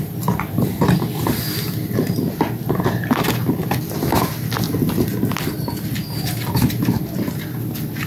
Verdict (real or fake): real